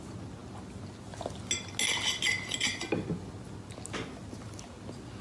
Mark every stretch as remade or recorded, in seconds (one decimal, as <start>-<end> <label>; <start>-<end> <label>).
0.0-5.2 recorded